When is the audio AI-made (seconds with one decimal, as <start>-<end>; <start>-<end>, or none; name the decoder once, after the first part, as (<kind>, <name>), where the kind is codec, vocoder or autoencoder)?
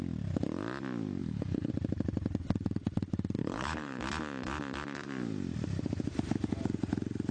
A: 1.2-1.7 (codec, HILCodec); 3.4-4.0